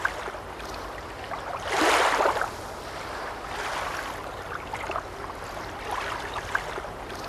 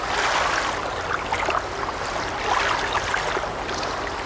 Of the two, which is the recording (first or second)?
second